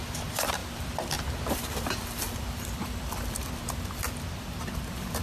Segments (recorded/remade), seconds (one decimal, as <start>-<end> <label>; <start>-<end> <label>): 0.0-5.2 remade